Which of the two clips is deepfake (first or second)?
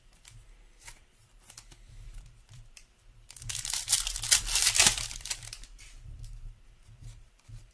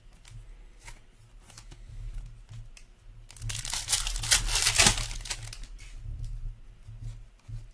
first